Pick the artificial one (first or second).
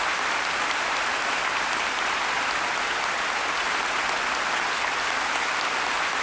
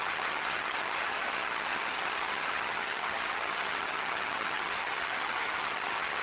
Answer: second